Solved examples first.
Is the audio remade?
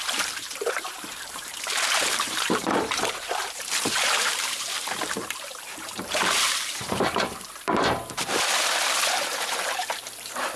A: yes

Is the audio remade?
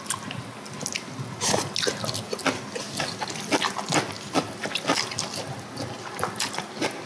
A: no